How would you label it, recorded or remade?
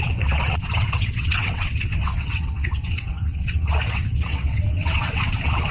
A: remade